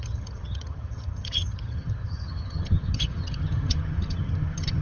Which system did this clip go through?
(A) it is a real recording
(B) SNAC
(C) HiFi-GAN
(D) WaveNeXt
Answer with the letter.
C